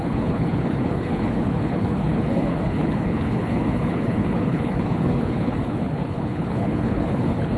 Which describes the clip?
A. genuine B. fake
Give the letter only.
B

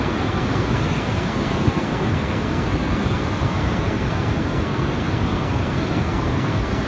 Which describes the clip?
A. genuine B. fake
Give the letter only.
B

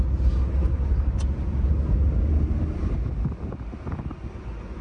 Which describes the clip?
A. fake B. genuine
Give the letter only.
B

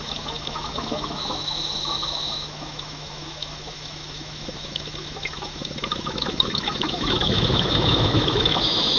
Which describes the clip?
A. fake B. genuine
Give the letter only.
A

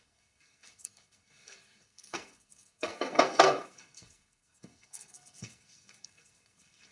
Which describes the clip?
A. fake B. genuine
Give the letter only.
A